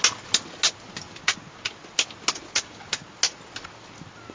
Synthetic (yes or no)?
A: no